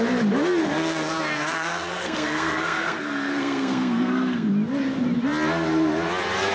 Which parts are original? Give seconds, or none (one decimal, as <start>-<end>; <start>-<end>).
0.0-0.6; 4.5-6.5